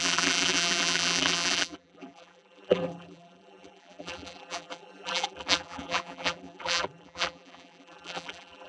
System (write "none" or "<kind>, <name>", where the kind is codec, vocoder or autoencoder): vocoder, BigVGAN v2